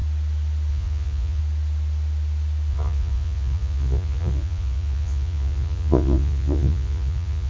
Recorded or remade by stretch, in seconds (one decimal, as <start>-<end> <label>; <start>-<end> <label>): 0.0-0.7 recorded; 0.7-1.4 remade; 1.4-2.7 recorded; 2.7-7.5 remade